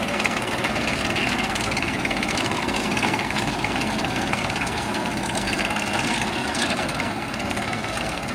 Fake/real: fake